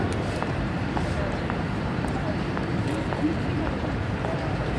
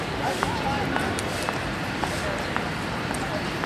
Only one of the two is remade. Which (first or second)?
first